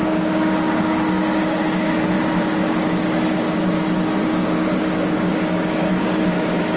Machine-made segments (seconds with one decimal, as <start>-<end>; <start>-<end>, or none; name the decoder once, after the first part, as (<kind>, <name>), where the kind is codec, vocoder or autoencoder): 0.0-3.6 (codec, DAC); 4.2-6.8